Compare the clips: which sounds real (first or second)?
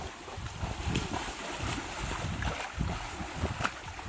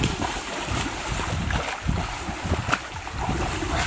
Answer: second